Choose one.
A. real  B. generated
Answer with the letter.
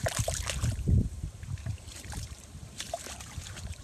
B